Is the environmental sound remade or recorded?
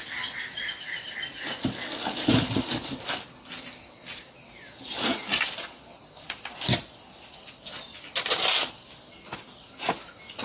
recorded